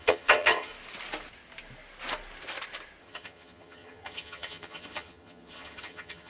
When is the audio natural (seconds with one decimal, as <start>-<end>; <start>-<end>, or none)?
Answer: 0.7-3.0